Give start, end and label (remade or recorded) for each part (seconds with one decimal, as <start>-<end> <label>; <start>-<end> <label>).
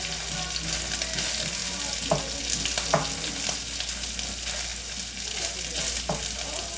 0.0-6.8 recorded